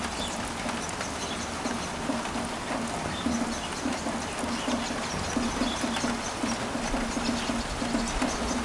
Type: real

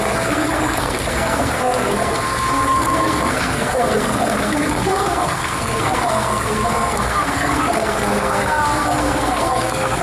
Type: fake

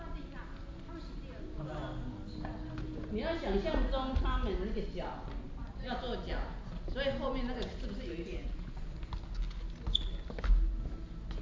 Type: real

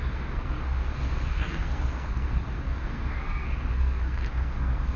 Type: fake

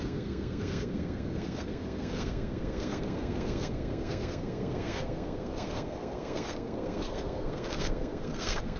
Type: fake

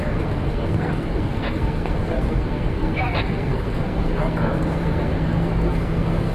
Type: fake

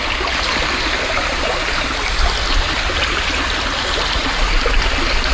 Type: real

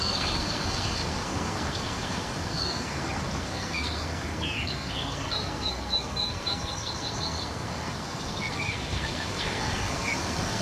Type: fake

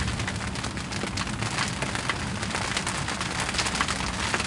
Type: real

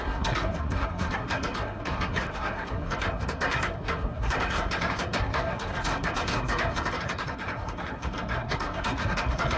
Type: fake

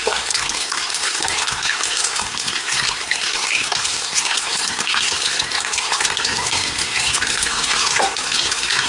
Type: fake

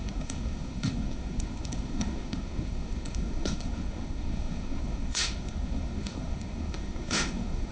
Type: fake